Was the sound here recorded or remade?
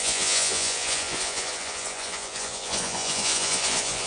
remade